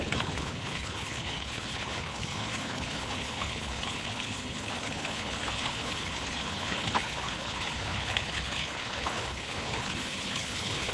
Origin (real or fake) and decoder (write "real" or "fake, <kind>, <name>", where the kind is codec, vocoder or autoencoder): fake, codec, HILCodec